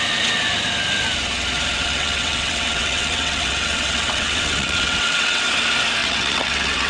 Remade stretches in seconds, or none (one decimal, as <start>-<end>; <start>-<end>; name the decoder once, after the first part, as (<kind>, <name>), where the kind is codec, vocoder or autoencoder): 1.8-5.4 (vocoder, WaveNeXt); 6.0-6.9